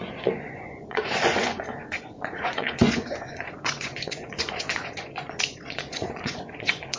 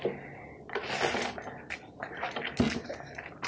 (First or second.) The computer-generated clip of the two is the first